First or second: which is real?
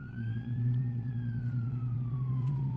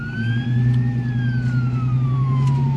second